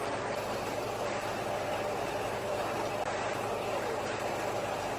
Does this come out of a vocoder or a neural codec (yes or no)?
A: no